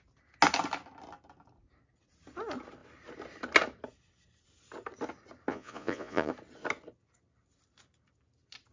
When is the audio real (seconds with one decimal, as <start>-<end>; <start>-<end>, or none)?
0.0-5.5; 6.3-8.7